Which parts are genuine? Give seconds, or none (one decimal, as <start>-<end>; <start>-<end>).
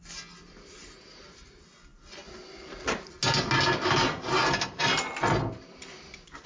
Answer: 0.0-6.5